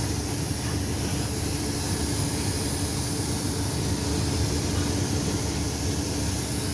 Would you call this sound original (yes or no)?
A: yes